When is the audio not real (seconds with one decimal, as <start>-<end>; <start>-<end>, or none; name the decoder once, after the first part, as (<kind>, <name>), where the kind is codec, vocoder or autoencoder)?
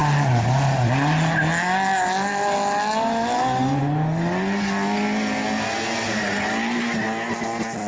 none